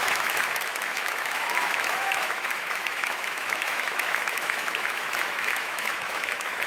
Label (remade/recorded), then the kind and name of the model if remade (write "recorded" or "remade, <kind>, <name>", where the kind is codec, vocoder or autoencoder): remade, autoencoder, DAC-VAE